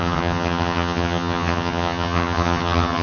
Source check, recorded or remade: remade